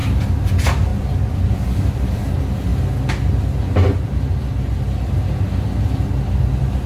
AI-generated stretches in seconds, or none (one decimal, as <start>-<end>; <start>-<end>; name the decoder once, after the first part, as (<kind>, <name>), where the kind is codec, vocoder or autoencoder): 0.0-0.5 (vocoder, BigVGAN v2); 0.9-2.2